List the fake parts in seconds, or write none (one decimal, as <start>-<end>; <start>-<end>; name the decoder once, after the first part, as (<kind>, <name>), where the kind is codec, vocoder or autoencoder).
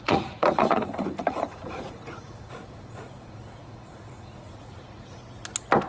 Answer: 0.0-5.2 (vocoder, Vocos)